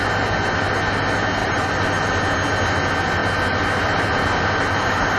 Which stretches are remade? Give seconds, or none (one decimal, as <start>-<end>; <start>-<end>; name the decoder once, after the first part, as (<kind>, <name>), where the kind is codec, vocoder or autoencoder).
1.4-2.1 (vocoder, BigVGAN v2)